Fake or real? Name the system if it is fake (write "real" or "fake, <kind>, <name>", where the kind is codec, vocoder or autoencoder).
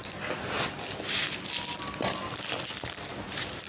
real